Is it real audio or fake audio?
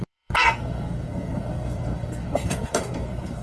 fake